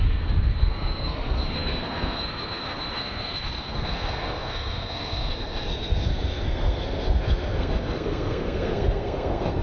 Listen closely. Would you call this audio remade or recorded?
remade